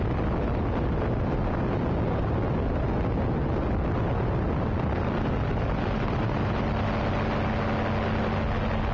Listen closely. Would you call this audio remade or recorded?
recorded